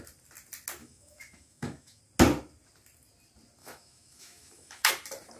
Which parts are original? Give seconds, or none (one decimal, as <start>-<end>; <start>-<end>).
0.0-0.8; 2.0-3.6; 4.9-5.4

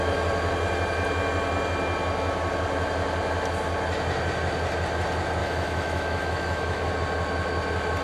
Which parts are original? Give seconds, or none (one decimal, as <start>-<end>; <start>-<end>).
0.0-5.4; 6.9-8.0

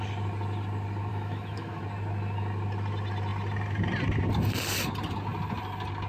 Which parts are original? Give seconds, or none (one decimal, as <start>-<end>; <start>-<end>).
0.0-1.1; 1.8-6.1

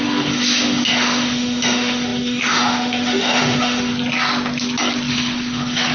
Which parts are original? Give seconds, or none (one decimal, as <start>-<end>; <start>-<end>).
3.9-5.1

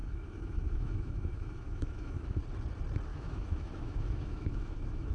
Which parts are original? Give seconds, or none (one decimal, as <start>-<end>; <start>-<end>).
2.4-3.1

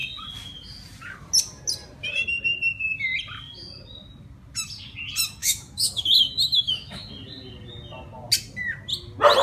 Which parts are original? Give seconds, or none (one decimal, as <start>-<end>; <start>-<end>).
0.0-5.4; 7.1-9.4

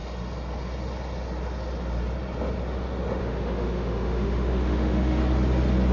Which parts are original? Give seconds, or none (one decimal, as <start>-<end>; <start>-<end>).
0.0-3.2; 5.2-5.9